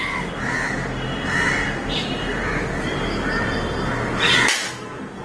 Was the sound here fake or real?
real